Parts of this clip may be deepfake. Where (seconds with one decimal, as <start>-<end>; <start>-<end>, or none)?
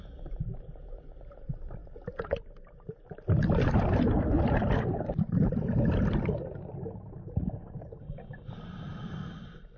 none